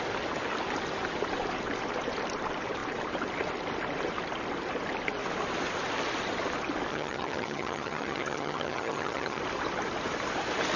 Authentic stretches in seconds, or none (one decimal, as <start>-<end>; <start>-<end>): 0.0-6.9; 9.4-10.8